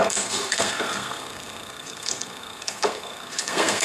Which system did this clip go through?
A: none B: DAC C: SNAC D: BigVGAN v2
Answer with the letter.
C